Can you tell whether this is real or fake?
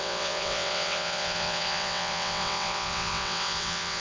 fake